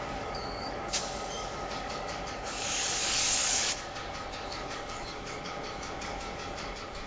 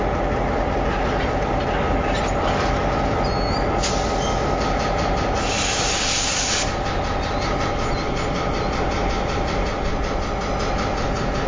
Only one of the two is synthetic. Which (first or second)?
first